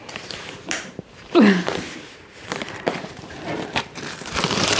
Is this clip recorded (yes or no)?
no